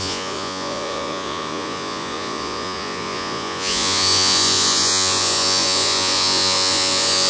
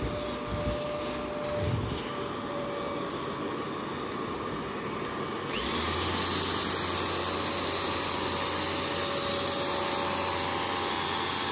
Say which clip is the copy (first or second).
first